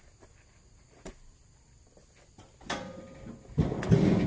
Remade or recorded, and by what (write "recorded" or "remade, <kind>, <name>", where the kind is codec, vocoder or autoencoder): recorded